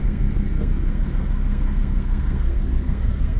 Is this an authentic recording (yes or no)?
no